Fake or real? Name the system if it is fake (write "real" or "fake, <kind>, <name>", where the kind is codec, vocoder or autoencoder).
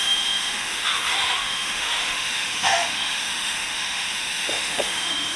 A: fake, autoencoder, DAC-VAE